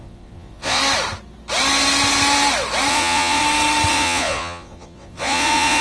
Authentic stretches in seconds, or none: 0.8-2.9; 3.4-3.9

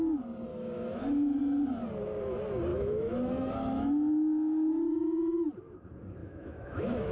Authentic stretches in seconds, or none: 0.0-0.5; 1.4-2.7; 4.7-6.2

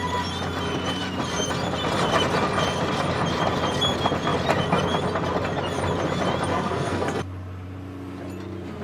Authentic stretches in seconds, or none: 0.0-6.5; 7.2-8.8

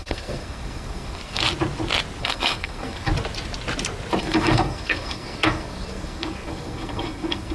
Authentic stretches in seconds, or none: 1.4-2.2; 3.1-4.2

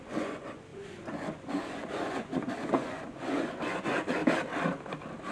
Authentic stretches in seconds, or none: 4.2-5.3

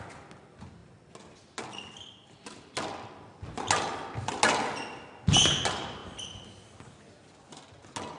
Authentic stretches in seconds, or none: 0.0-8.2